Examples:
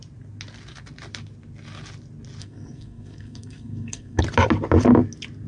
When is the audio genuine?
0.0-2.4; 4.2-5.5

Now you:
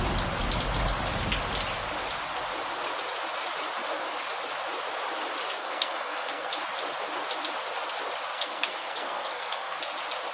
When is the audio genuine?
0.0-5.6; 6.5-8.3; 9.8-10.3

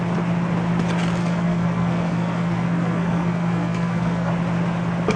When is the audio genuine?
0.0-1.2; 4.3-5.2